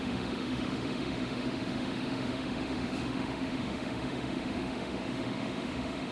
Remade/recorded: remade